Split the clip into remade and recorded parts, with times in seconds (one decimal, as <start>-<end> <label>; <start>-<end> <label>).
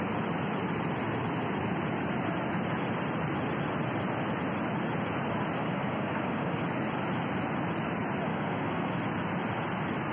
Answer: 0.0-5.6 recorded; 5.6-6.6 remade; 6.6-8.3 recorded; 8.3-8.9 remade; 8.9-10.1 recorded